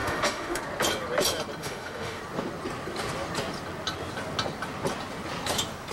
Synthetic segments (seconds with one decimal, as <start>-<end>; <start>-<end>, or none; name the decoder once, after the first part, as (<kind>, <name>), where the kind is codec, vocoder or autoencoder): 0.0-0.6 (autoencoder, DAC-VAE); 1.6-2.2